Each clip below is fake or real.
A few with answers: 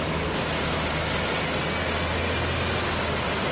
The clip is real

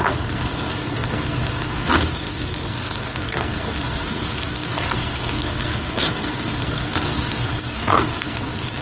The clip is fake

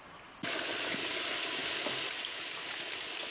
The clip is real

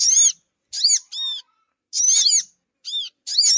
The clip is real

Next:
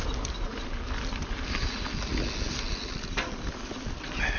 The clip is real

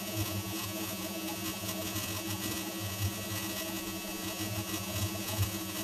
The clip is fake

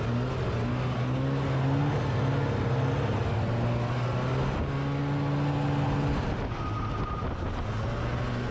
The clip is real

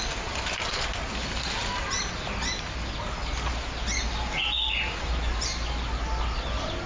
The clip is real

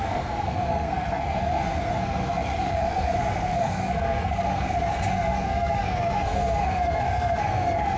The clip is fake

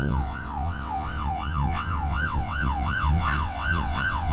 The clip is fake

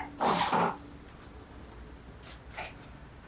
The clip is real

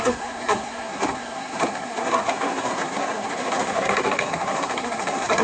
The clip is fake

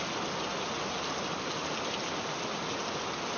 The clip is real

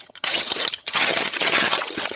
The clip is fake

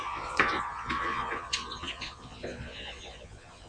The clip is fake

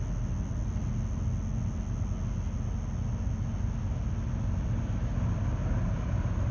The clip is real